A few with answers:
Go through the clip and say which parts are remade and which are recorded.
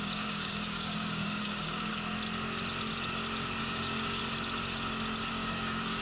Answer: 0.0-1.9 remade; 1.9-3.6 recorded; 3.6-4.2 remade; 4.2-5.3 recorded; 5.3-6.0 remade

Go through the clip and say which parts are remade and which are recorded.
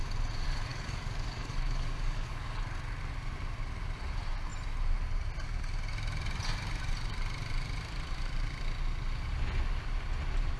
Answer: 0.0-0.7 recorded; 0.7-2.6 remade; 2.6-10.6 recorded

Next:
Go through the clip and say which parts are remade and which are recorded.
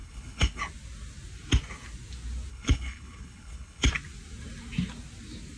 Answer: 0.0-0.6 remade; 0.6-2.5 recorded; 2.5-3.9 remade; 3.9-5.6 recorded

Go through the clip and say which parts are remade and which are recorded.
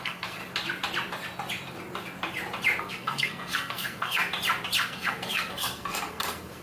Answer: 0.0-0.4 remade; 0.4-2.8 recorded; 2.8-4.2 remade; 4.2-4.8 recorded; 4.8-6.6 remade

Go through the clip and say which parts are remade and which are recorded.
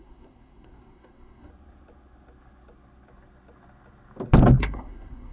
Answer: 0.0-1.5 remade; 1.5-4.6 recorded; 4.6-5.3 remade